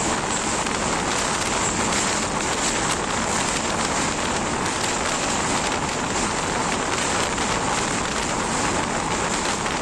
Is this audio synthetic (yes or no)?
no